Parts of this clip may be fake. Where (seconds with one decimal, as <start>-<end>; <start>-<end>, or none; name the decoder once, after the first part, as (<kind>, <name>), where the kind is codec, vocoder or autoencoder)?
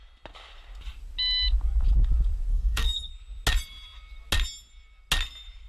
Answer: 2.5-3.1 (codec, SNAC)